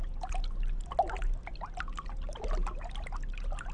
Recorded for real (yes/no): yes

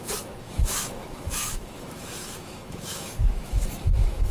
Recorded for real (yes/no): no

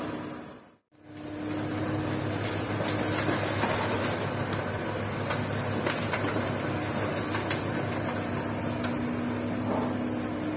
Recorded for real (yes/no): yes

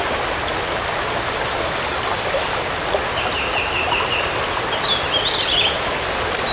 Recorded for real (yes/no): yes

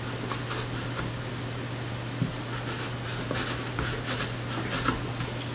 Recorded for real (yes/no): yes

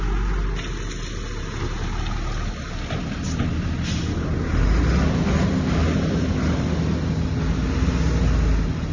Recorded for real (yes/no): yes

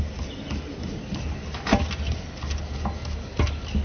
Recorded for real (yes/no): yes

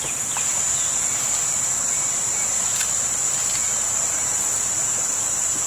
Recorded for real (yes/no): yes